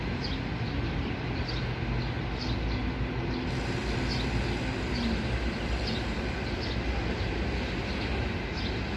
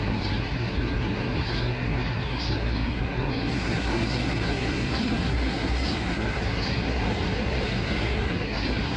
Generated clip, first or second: second